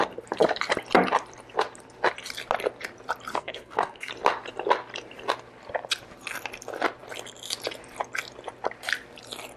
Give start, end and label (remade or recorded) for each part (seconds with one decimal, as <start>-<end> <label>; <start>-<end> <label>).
0.0-3.3 recorded; 3.3-4.1 remade; 4.1-9.6 recorded